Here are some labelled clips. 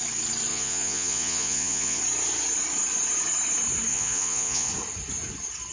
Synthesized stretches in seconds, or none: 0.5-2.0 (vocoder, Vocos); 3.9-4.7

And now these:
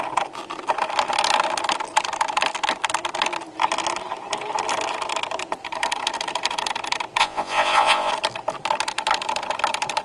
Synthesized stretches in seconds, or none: 7.2-8.1 (vocoder, Vocos)